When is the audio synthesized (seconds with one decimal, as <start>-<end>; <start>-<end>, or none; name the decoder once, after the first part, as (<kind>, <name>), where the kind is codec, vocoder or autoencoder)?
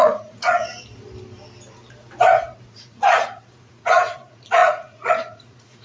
0.0-0.6 (vocoder, Vocos); 2.7-5.8